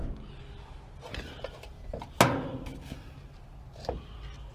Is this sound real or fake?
real